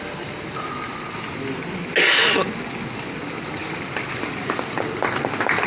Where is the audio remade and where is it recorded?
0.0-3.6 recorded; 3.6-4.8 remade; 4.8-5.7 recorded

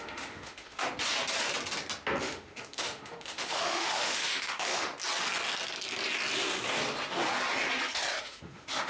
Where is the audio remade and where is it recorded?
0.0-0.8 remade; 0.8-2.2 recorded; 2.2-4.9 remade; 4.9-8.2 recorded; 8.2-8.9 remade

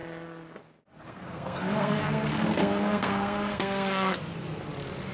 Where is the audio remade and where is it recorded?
0.0-1.1 recorded; 1.1-4.2 remade; 4.2-5.1 recorded

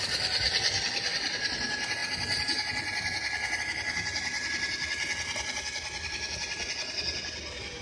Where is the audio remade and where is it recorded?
0.0-7.8 recorded

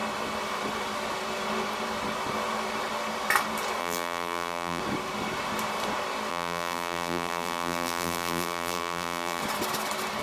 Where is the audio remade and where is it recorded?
0.0-3.8 recorded; 3.8-4.8 remade; 4.8-6.3 recorded; 6.3-9.4 remade; 9.4-10.2 recorded

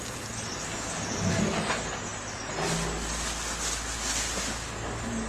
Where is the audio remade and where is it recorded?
0.0-5.3 recorded